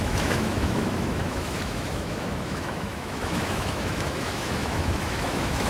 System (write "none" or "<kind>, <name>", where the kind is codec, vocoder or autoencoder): autoencoder, DAC-VAE